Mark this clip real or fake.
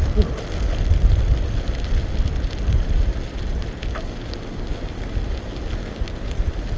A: real